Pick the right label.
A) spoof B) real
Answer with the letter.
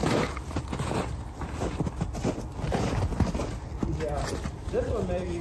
B